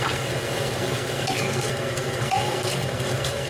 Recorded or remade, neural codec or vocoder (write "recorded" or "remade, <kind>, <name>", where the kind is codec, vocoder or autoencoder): remade, codec, SNAC